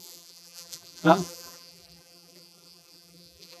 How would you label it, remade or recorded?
remade